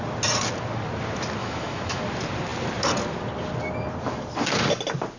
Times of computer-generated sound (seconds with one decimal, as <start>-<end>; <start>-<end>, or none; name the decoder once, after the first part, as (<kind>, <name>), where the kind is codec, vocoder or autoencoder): 1.4-2.0 (autoencoder, DAC-VAE)